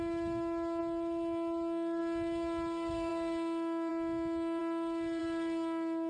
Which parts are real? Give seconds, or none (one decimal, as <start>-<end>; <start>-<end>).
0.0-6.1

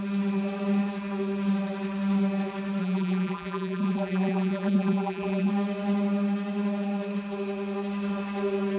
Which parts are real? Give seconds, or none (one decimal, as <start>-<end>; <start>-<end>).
0.0-2.8; 5.5-8.8

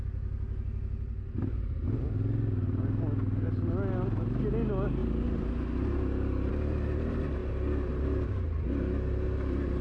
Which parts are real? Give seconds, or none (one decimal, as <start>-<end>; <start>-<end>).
0.0-9.8